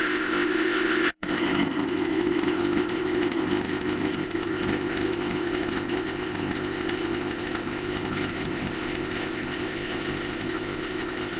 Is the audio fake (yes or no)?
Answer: yes